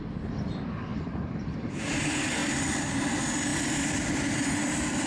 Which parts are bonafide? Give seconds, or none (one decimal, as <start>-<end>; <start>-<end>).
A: 0.0-0.9; 1.7-5.1